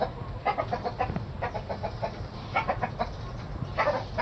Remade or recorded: remade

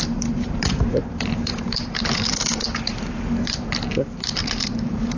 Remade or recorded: remade